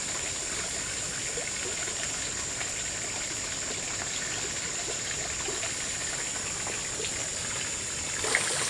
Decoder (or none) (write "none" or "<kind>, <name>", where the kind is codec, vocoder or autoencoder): none